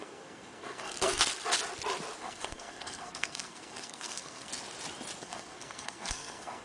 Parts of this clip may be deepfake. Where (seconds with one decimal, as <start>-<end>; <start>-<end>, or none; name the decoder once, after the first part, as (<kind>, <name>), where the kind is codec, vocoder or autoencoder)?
0.0-1.3 (codec, SNAC); 2.2-4.5; 5.2-6.6